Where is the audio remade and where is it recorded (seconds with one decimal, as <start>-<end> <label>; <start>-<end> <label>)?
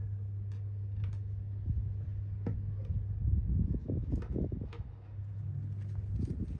0.0-3.8 recorded; 3.8-5.5 remade; 5.5-6.6 recorded